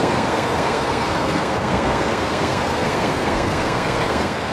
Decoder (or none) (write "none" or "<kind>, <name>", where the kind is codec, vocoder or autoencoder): codec, SNAC